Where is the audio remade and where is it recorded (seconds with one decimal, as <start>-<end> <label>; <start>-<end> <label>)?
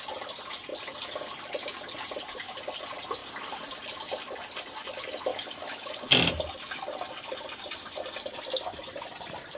0.0-5.3 recorded; 5.3-6.1 remade; 6.1-9.6 recorded